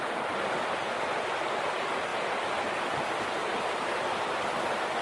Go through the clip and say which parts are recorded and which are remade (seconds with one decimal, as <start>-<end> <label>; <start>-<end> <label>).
0.0-5.0 recorded